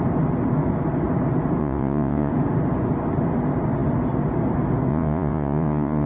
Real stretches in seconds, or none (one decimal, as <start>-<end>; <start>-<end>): 0.0-1.6; 2.3-4.9